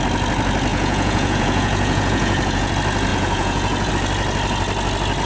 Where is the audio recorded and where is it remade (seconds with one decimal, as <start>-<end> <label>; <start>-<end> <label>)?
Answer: 0.0-0.7 recorded; 0.7-2.7 remade; 2.7-3.1 recorded; 3.1-3.9 remade; 3.9-5.3 recorded